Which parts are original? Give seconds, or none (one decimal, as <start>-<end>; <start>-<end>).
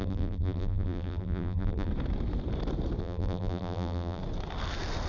1.9-3.0; 4.2-5.1